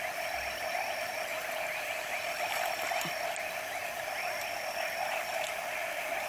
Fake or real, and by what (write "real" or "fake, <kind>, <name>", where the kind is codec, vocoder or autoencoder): fake, vocoder, BigVGAN v2